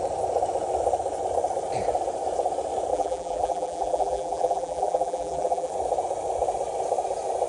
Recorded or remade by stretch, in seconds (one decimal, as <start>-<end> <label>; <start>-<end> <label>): 0.0-2.9 recorded; 2.9-5.7 remade; 5.7-7.5 recorded